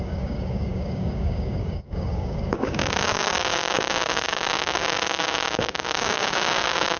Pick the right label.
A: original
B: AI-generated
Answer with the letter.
B